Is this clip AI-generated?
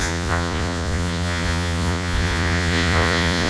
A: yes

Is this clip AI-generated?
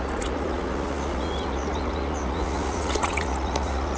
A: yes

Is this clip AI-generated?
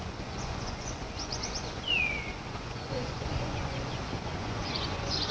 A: yes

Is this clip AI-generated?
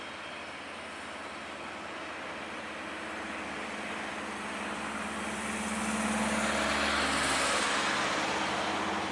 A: no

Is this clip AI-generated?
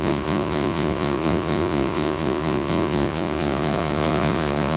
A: yes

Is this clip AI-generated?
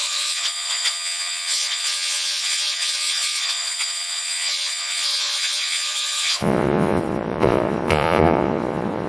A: yes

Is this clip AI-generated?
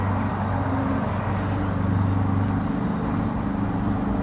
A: no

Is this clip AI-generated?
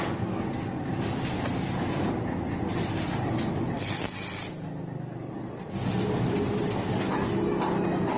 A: no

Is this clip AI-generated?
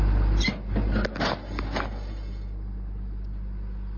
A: no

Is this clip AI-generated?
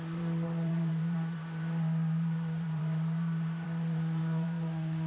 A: yes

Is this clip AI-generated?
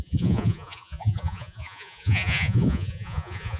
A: yes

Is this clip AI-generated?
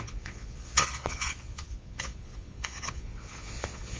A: yes